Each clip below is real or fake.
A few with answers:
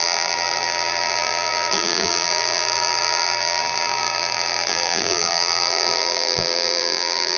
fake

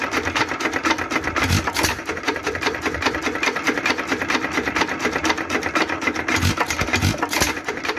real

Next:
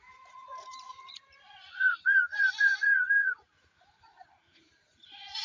fake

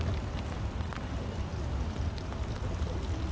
real